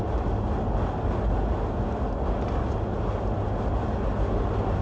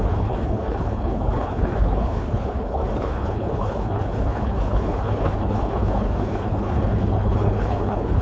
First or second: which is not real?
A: second